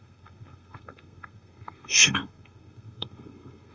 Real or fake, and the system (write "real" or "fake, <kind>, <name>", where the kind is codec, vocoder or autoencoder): fake, codec, SNAC